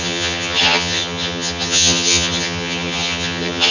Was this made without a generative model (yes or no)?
no